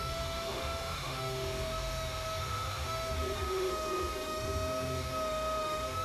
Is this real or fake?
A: fake